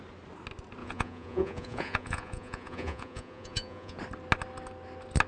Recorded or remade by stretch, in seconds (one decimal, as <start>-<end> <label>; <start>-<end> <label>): 0.0-0.8 recorded; 0.8-4.0 remade; 4.0-5.3 recorded